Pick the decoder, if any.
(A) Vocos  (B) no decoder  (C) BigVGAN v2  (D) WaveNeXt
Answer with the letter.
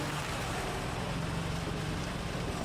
B